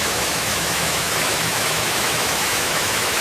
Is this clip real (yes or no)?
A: no